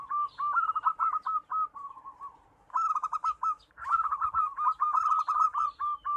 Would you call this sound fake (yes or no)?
yes